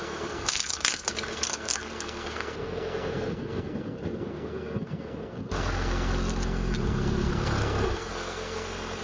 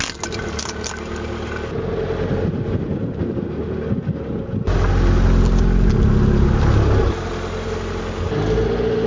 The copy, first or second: first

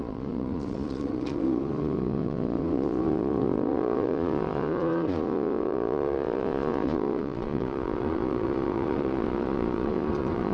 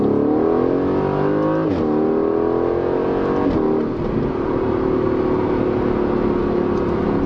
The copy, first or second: first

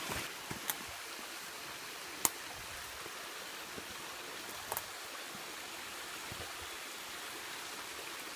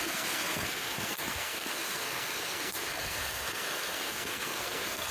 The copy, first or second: second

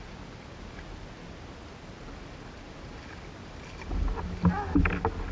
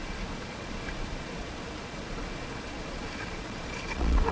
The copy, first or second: second